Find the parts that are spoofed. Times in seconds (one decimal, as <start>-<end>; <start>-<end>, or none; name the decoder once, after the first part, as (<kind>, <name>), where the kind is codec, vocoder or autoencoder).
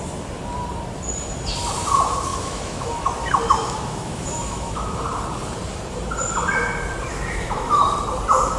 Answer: 2.3-5.0 (autoencoder, DAC-VAE); 7.1-7.8